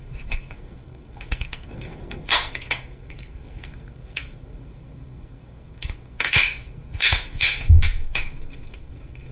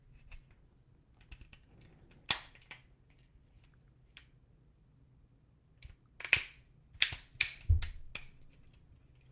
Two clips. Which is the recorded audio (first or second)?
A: second